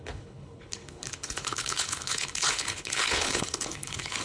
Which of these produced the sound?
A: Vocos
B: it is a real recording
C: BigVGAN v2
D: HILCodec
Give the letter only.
D